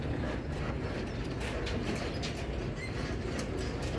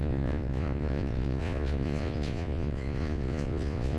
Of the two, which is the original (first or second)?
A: first